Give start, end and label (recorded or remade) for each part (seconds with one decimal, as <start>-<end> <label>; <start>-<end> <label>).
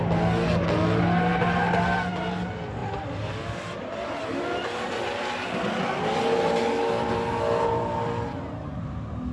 0.0-9.3 recorded